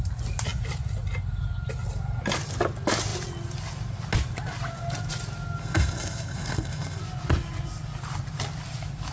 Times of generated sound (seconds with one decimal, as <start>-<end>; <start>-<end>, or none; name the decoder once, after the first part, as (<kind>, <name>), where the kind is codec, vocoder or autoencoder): 5.6-7.0 (codec, SNAC)